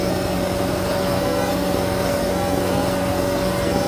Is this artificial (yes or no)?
yes